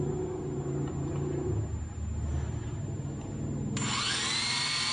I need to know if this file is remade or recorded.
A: recorded